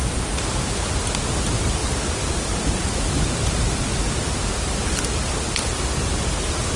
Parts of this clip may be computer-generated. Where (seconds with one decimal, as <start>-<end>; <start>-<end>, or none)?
none